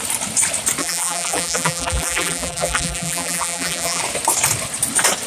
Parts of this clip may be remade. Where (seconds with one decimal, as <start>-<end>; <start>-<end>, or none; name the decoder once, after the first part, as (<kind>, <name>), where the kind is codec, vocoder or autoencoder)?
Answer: 0.8-4.0 (vocoder, BigVGAN v2)